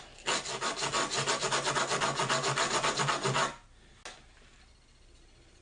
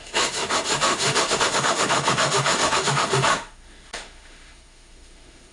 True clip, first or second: first